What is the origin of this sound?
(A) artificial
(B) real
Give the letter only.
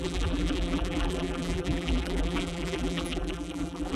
A